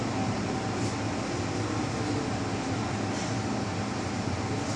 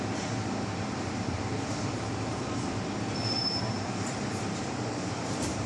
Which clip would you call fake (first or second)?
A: second